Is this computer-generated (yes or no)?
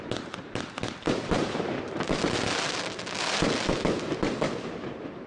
no